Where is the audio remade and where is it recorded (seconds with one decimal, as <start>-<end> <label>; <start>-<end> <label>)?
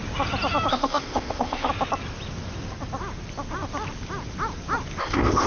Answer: 0.0-0.7 recorded; 0.7-1.7 remade; 1.7-5.0 recorded; 5.0-5.5 remade